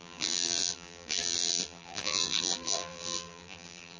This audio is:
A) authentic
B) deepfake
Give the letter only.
B